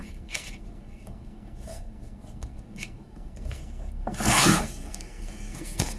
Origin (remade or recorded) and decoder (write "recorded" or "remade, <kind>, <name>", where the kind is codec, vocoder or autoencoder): remade, codec, SNAC